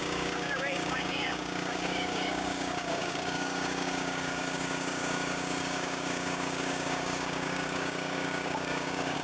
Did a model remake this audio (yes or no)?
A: yes